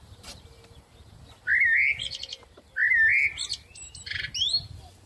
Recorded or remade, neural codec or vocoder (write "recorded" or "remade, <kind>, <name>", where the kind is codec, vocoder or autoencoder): recorded